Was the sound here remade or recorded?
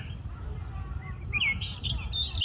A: remade